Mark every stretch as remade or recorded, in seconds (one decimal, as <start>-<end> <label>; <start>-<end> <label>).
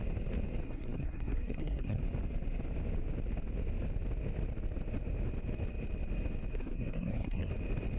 0.0-0.6 recorded; 0.6-2.0 remade; 2.0-6.5 recorded; 6.5-7.5 remade; 7.5-8.0 recorded